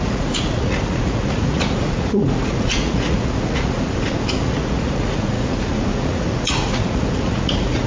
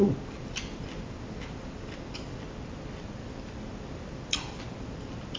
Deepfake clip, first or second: first